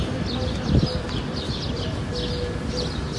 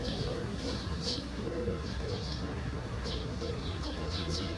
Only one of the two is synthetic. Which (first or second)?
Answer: second